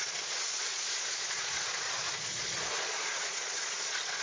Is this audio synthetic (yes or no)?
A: yes